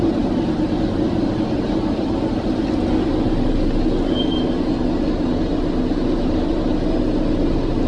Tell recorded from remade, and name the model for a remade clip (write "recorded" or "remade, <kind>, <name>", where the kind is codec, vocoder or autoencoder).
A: recorded